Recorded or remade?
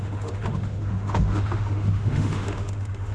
remade